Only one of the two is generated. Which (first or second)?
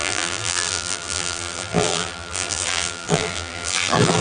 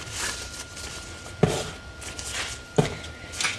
first